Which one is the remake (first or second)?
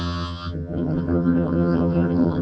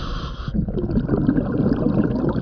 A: first